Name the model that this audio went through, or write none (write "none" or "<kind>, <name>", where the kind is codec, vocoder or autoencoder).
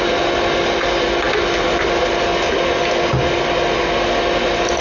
none